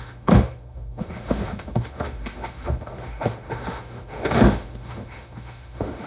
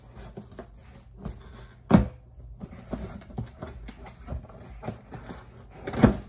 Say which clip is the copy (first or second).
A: first